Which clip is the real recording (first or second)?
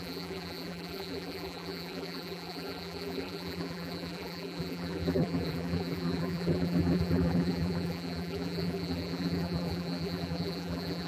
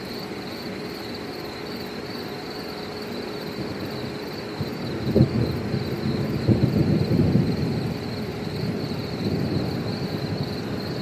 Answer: second